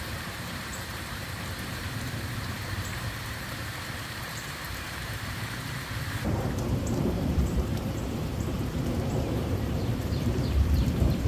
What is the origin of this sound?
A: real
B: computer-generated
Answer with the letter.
B